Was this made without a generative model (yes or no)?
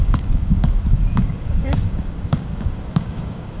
no